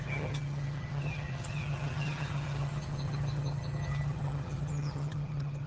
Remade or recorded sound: remade